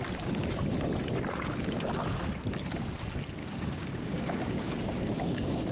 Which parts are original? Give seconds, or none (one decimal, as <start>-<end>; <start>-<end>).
0.0-3.4